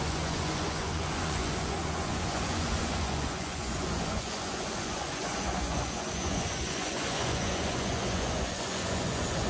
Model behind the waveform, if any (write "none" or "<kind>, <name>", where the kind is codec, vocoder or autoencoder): vocoder, Vocos